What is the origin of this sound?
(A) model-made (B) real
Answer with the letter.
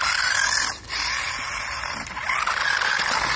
B